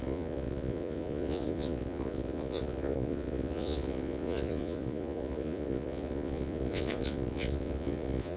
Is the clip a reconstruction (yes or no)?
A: yes